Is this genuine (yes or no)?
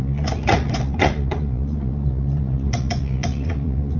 no